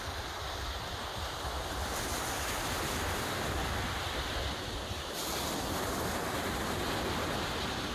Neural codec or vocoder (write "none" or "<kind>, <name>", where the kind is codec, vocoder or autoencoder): none